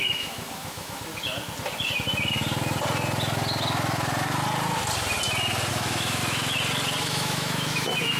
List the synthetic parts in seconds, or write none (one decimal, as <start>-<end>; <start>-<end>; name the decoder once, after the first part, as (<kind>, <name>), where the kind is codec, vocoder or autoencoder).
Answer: 0.0-1.1 (autoencoder, DAC-VAE); 5.7-6.2; 7.0-8.2